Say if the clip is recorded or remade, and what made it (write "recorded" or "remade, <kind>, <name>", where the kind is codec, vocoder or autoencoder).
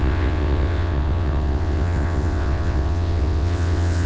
remade, vocoder, WaveNeXt